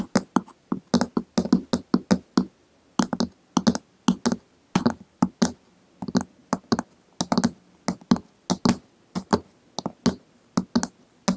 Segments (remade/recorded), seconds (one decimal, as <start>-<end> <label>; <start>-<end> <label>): 0.0-11.4 recorded